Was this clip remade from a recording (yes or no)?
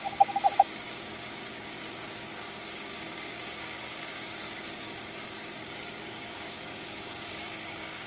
yes